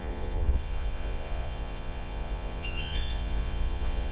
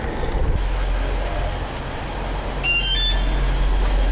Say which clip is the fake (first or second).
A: first